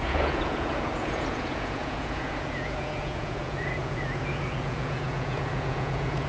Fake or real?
fake